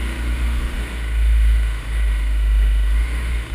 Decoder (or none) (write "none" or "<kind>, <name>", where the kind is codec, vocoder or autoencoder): autoencoder, DAC-VAE